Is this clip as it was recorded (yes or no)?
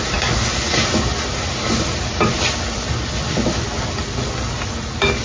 yes